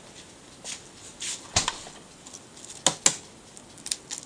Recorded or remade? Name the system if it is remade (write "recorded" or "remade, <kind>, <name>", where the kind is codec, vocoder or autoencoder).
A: recorded